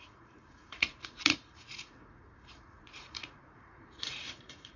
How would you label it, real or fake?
fake